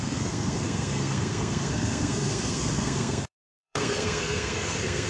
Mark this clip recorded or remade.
remade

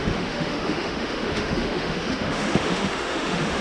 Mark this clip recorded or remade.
remade